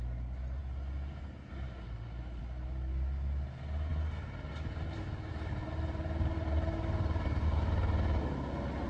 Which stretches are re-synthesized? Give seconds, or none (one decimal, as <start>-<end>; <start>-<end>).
5.3-7.6